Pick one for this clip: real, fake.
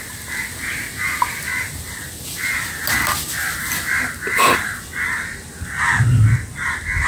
real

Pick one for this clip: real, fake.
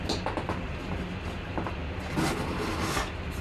real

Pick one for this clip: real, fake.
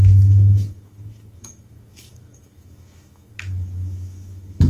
fake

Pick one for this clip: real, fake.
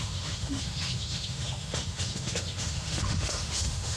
fake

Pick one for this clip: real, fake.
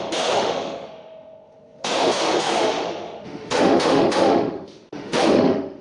fake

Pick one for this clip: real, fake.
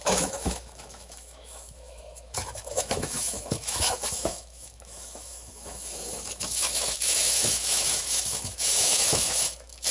fake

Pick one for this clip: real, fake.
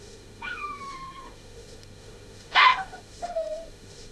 fake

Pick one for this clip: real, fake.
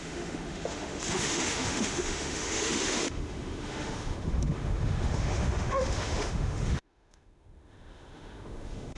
fake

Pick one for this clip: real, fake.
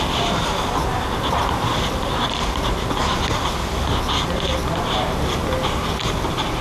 real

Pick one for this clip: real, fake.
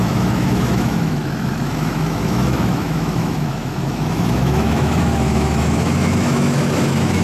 fake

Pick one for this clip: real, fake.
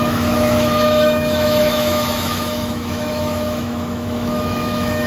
fake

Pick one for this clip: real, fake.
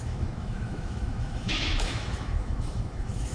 fake